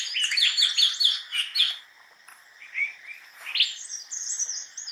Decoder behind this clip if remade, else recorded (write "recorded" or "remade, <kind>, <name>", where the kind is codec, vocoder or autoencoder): recorded